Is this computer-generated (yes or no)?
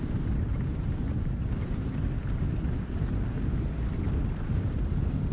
no